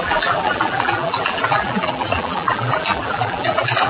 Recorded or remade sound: remade